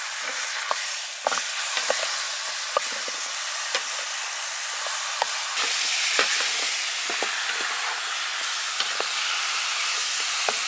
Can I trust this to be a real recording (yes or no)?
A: yes